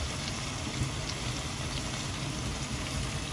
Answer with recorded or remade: recorded